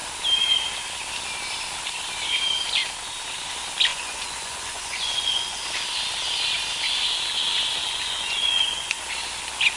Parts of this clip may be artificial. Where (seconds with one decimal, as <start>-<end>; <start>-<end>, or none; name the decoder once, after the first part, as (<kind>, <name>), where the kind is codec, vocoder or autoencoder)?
3.9-5.6 (vocoder, Vocos); 7.8-9.0